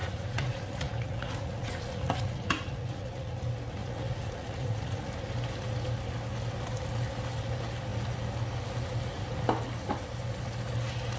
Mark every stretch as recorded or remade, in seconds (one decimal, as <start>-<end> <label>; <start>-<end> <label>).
0.0-3.4 remade; 3.4-3.8 recorded; 3.8-5.1 remade; 5.1-11.2 recorded